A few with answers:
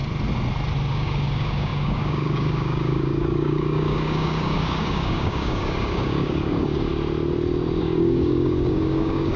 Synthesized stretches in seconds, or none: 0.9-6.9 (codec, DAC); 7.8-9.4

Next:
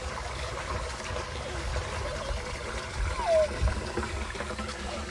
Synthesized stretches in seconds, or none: 0.0-1.7 (codec, DAC); 3.7-5.1

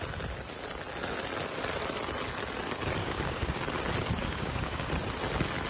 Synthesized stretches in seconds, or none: 3.0-3.6 (codec, DAC); 4.2-4.9